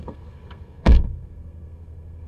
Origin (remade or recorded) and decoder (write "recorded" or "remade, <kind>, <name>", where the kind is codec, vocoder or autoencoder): remade, codec, SNAC